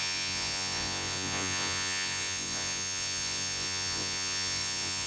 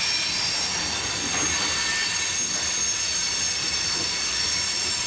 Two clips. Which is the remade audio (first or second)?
first